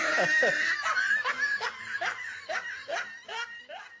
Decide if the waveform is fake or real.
real